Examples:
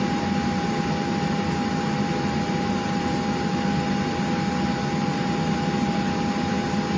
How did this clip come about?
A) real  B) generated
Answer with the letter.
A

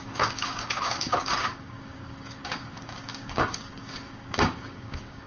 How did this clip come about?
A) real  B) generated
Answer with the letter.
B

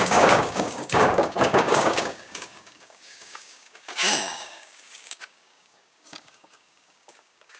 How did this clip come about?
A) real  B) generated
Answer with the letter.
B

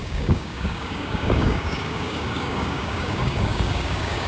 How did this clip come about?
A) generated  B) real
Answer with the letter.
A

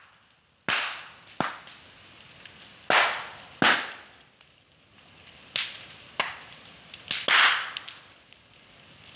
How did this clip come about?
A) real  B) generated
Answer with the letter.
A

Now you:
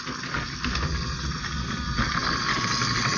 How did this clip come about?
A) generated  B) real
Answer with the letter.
B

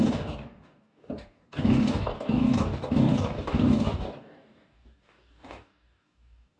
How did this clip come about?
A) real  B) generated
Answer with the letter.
B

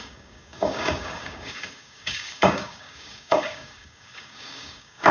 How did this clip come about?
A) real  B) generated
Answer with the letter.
B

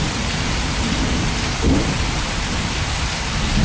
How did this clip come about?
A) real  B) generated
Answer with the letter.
A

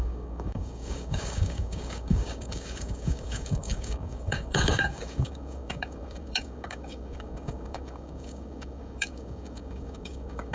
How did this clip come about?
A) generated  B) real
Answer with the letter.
A